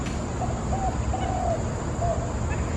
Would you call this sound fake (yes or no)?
no